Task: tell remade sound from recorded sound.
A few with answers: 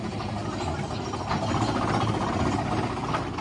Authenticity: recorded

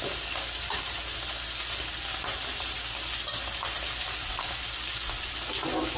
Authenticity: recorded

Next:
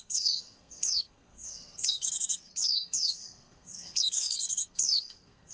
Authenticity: remade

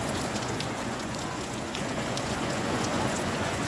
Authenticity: remade